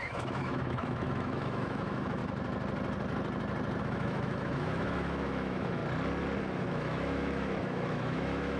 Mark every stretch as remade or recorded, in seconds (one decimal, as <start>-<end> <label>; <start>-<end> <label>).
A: 0.0-2.2 remade; 2.2-3.8 recorded; 3.8-5.8 remade; 5.8-6.4 recorded; 6.4-8.6 remade